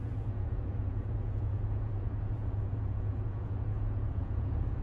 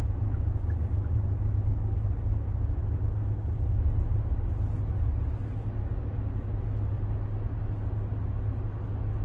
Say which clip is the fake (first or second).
first